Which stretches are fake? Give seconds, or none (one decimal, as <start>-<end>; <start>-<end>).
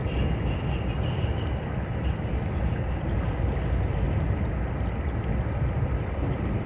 none